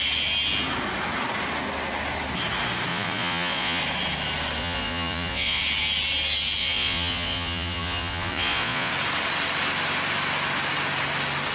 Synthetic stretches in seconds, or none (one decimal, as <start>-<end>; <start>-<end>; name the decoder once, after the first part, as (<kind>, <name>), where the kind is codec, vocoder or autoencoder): 2.9-3.8 (vocoder, Vocos); 4.6-5.6; 6.6-8.9